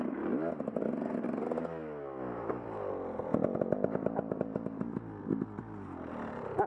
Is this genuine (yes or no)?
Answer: yes